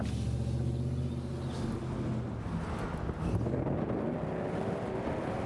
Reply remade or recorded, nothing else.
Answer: recorded